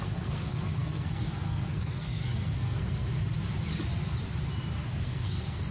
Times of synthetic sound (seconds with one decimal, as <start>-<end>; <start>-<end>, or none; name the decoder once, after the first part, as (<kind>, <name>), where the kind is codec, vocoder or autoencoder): 0.0-3.1 (codec, SNAC); 4.9-5.7